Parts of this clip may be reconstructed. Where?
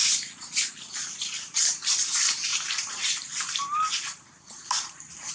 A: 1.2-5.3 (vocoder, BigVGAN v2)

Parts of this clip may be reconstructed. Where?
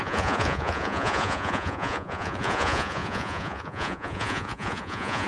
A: 0.0-5.3 (vocoder, Vocos)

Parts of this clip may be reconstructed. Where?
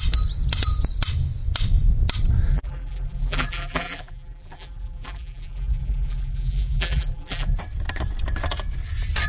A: 2.5-7.6 (vocoder, BigVGAN v2)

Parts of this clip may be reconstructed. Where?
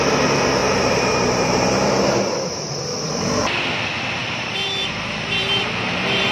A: 0.6-3.5 (vocoder, BigVGAN v2); 4.2-6.3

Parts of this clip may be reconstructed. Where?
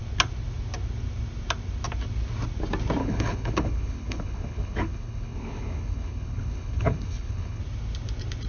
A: 3.0-7.6 (codec, HILCodec)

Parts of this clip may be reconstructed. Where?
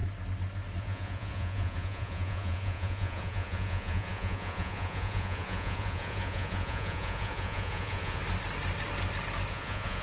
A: 0.8-8.2 (vocoder, Vocos); 9.5-10.0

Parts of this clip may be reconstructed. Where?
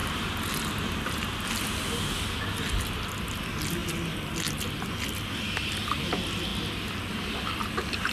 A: none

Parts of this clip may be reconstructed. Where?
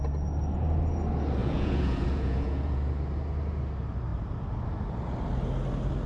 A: 1.4-2.9 (vocoder, Vocos)